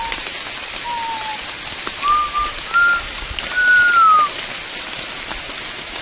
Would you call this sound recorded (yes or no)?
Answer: yes